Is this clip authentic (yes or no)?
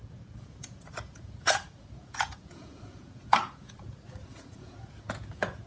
no